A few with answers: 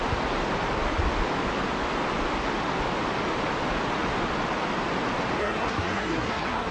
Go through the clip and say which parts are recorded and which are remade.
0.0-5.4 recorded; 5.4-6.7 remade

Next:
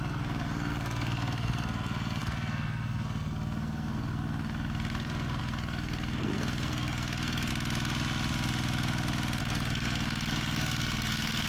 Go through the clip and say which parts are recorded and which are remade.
0.0-7.5 remade; 7.5-9.4 recorded; 9.4-11.5 remade

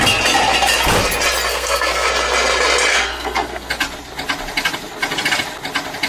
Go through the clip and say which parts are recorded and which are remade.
0.0-1.5 recorded; 1.5-2.1 remade; 2.1-2.9 recorded; 2.9-3.7 remade; 3.7-6.1 recorded

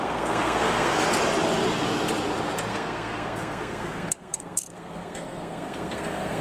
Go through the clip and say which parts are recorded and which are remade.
0.0-1.0 remade; 1.0-2.7 recorded; 2.7-6.4 remade

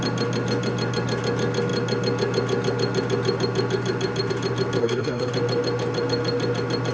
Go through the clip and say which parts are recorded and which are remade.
0.0-4.8 recorded; 4.8-5.3 remade; 5.3-6.9 recorded

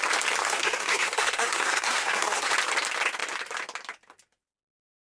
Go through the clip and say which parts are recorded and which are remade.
0.0-0.4 recorded; 0.4-2.5 remade; 2.5-5.2 recorded